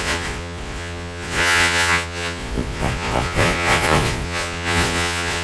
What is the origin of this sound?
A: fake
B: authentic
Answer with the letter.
A